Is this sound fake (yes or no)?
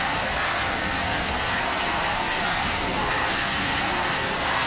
yes